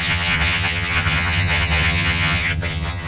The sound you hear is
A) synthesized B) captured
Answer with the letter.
A